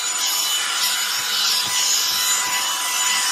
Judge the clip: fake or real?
real